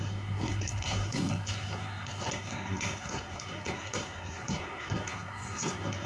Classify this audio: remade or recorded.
remade